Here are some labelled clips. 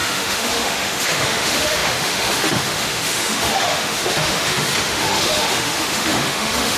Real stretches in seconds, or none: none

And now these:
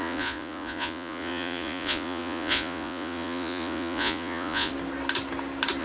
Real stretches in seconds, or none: 4.7-5.8